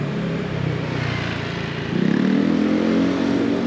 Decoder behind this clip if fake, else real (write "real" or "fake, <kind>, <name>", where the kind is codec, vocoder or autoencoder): real